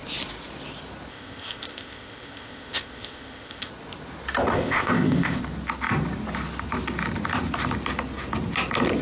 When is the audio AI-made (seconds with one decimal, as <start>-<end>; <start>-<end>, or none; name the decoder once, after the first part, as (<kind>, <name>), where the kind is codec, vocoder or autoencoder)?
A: 1.1-3.7 (codec, ZipCodec); 4.5-5.4